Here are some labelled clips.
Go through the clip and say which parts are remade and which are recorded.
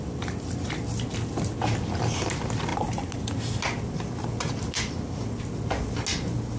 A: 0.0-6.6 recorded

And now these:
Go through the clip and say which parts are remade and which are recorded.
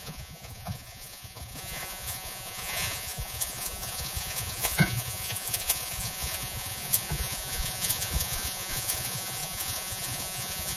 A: 0.0-10.8 remade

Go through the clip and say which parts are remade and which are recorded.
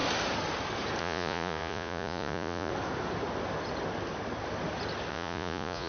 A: 0.0-1.0 recorded; 1.0-2.7 remade; 2.7-5.1 recorded; 5.1-5.9 remade